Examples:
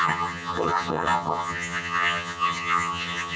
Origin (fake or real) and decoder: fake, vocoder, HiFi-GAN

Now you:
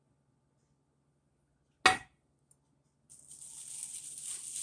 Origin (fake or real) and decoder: real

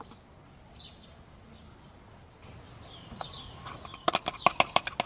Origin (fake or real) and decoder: real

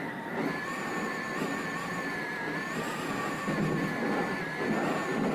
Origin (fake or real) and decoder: real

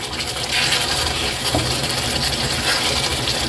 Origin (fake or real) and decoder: real